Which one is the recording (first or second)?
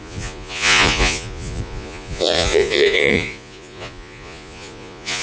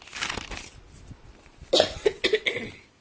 second